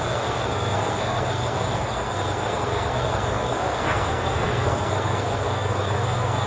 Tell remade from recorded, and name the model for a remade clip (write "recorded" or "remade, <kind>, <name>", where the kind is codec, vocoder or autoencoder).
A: remade, codec, SNAC